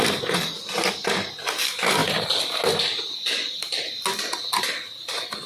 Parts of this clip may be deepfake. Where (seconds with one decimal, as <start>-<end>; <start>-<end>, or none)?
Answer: none